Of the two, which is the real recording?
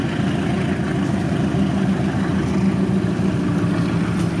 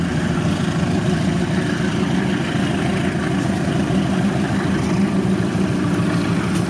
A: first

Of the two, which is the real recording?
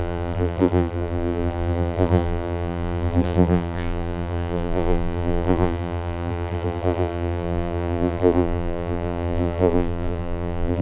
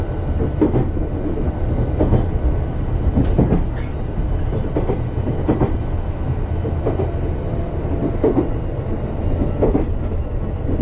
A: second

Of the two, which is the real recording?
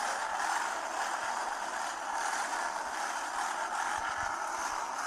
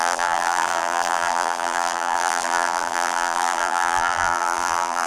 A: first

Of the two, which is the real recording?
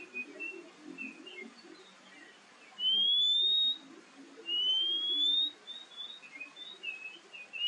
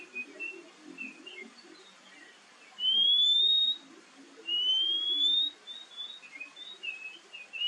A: first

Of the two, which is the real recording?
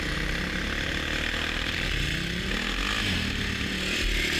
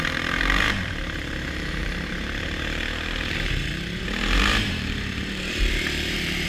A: first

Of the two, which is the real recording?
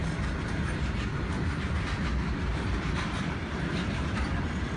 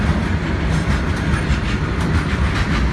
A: second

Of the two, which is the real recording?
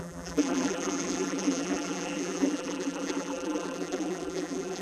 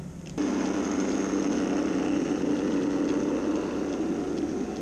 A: second